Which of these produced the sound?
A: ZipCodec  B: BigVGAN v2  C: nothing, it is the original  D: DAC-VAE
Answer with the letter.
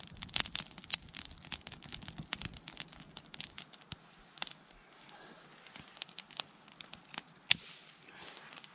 C